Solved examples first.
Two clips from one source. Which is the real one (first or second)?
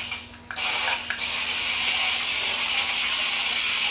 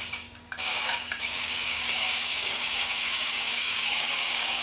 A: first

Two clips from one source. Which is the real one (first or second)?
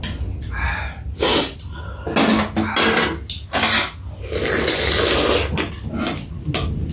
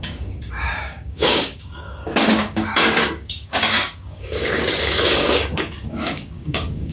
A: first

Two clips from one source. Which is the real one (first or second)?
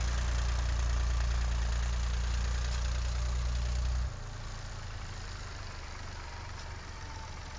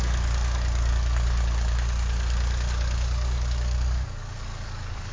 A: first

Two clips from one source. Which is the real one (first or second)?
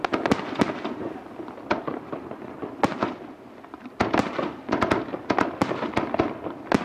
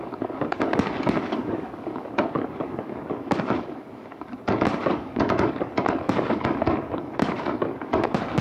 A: first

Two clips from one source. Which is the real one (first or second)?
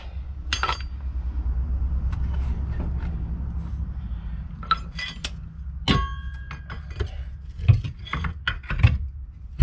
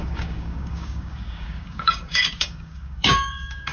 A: first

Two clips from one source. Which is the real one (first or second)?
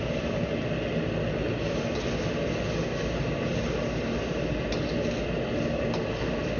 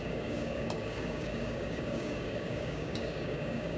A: first